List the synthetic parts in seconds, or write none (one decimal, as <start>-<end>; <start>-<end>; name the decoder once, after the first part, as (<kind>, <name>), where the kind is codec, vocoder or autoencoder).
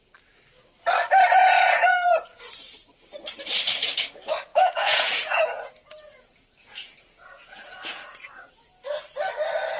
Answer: 1.4-2.4 (vocoder, Vocos); 4.5-8.5